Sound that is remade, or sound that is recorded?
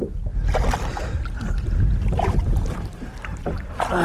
recorded